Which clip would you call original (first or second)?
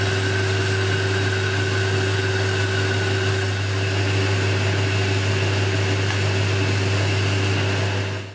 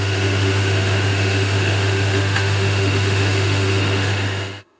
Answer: first